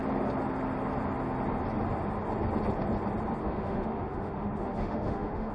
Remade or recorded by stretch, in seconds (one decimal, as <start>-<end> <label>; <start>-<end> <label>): 0.0-3.4 recorded; 3.4-5.5 remade